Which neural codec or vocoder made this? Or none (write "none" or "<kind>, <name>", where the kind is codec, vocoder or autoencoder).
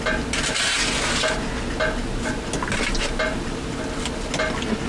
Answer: none